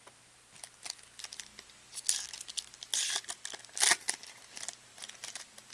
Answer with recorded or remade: recorded